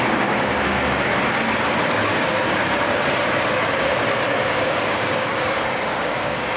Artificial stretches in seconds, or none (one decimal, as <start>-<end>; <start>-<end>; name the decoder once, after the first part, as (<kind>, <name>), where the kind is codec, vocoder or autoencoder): 0.0-1.1 (codec, DAC); 2.2-2.6; 4.5-6.6